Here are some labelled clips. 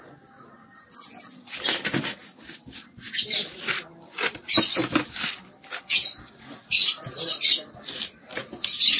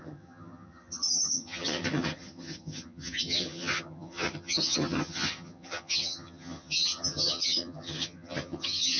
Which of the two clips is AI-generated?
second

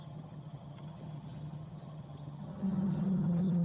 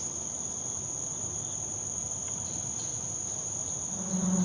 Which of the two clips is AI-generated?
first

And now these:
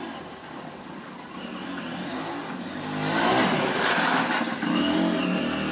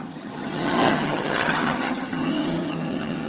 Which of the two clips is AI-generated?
second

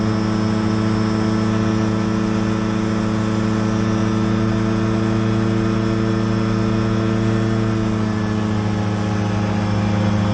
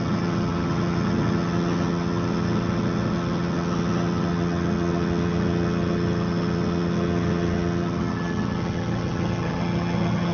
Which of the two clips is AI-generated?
second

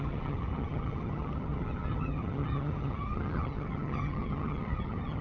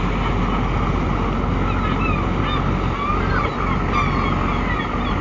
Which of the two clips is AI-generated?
first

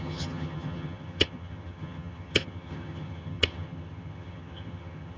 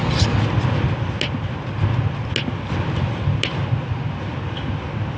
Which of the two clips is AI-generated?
first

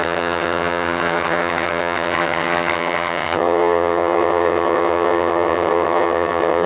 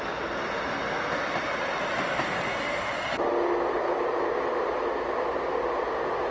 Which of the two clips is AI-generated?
first